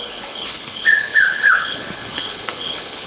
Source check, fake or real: fake